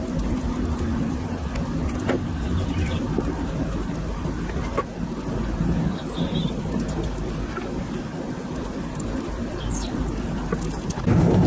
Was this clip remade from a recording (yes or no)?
no